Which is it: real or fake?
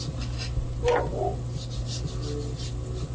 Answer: real